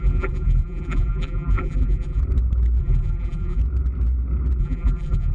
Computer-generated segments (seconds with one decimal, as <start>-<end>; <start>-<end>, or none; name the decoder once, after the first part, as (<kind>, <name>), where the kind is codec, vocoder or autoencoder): 0.0-2.2 (vocoder, BigVGAN v2); 2.8-3.6; 4.6-5.3